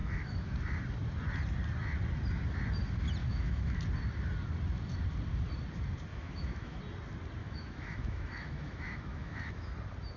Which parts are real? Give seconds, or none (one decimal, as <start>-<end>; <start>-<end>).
0.5-3.2; 3.8-6.1; 6.8-7.4; 9.7-10.2